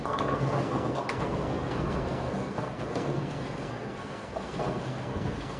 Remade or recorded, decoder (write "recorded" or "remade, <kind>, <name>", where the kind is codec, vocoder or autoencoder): remade, codec, SNAC